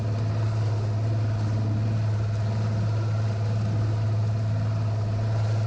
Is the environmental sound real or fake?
real